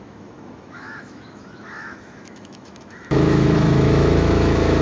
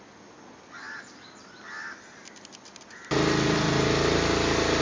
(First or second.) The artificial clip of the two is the first